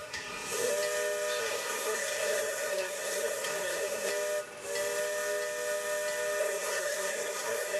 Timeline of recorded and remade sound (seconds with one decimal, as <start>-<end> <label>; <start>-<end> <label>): 0.0-0.7 remade; 0.7-1.4 recorded; 1.4-4.1 remade; 4.1-6.4 recorded; 6.4-7.8 remade